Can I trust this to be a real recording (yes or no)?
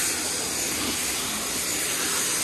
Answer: yes